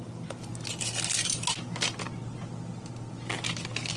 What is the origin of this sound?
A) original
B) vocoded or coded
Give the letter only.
A